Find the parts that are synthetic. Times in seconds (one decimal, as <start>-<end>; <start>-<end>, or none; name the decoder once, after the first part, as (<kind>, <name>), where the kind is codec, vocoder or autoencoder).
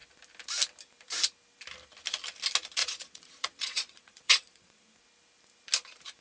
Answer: 2.8-5.0 (vocoder, Vocos)